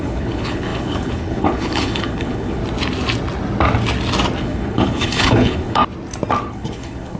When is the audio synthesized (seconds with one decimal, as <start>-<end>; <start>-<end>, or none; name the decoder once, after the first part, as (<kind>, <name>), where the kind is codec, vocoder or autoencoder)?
0.0-2.6 (codec, HILCodec); 4.4-5.8; 6.5-7.2